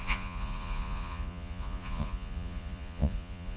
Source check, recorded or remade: remade